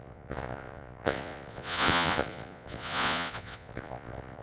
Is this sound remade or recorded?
remade